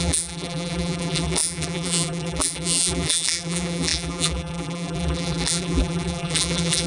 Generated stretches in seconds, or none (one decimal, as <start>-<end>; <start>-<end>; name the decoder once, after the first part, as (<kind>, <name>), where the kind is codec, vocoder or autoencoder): 0.0-6.9 (vocoder, BigVGAN v2)